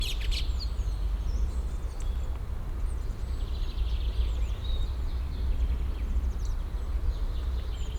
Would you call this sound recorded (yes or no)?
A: yes